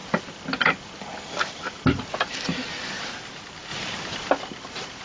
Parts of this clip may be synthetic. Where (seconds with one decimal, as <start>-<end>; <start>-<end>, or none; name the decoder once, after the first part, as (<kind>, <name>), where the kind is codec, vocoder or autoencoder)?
none